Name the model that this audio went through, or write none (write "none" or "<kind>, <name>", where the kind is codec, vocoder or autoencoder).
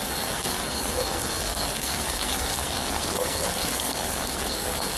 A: codec, SNAC